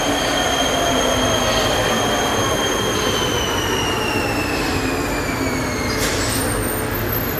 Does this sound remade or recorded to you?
recorded